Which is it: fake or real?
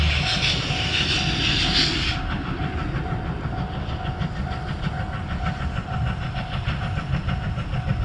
real